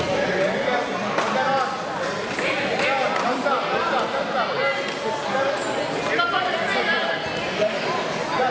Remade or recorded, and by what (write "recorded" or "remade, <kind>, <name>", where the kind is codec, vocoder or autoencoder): recorded